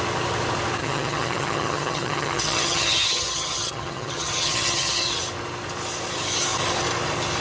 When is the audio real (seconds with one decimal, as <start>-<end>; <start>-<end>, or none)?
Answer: 0.0-0.8; 5.2-7.4